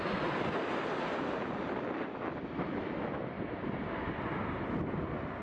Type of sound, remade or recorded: recorded